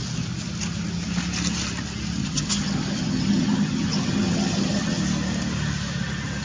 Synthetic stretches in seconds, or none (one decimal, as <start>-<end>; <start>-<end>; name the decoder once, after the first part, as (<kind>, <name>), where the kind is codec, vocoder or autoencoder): 2.2-5.0 (vocoder, HiFi-GAN)